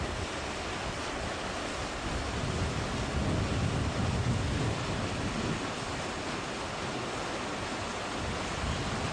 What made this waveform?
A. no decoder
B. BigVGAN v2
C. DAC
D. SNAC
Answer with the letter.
A